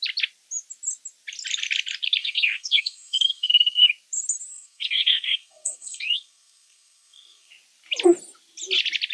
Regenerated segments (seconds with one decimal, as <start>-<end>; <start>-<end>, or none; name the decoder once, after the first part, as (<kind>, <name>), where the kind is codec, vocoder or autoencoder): 2.2-3.9 (codec, SNAC); 4.5-7.5